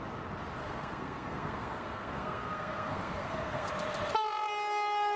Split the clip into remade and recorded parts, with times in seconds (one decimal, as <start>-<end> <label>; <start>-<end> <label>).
0.0-0.6 recorded; 0.6-3.7 remade; 3.7-5.2 recorded